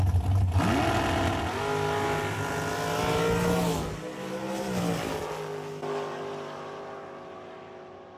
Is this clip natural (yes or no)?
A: yes